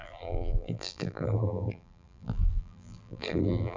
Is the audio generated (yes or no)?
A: yes